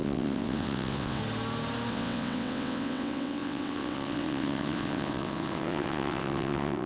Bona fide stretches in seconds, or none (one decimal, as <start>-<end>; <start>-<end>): 1.2-1.9